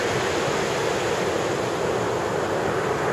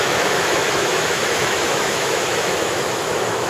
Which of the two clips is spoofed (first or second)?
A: second